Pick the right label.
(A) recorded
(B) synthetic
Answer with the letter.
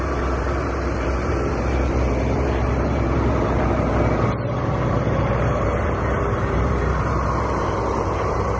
B